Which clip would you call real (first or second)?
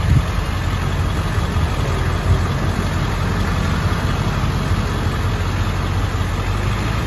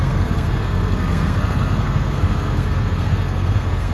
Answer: first